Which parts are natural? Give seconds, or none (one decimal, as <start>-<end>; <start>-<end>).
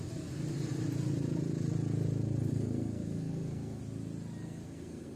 0.0-2.5; 3.8-4.4